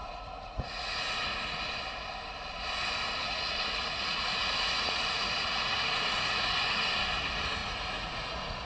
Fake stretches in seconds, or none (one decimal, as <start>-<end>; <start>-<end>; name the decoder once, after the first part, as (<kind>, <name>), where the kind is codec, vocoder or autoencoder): 0.0-1.6 (vocoder, Vocos); 3.2-6.9; 7.6-8.7